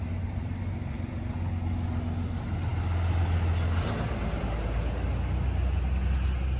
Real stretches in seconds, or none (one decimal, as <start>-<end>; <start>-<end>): 0.0-6.6